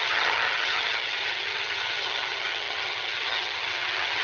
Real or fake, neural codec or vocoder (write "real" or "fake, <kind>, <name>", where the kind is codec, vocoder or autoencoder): fake, vocoder, HiFi-GAN